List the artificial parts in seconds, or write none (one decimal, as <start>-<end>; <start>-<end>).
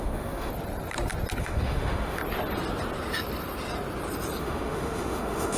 0.0-0.5; 1.4-2.2; 4.4-5.6